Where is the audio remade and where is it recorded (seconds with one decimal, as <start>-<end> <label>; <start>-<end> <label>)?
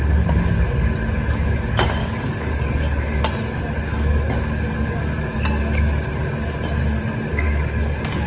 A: 0.0-2.0 recorded; 2.0-3.2 remade; 3.2-3.9 recorded; 3.9-5.4 remade; 5.4-7.3 recorded; 7.3-8.3 remade